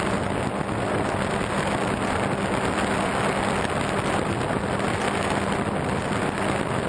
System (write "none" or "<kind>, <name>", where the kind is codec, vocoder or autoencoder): none